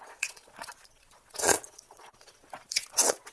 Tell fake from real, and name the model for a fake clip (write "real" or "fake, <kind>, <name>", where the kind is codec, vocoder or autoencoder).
fake, vocoder, Vocos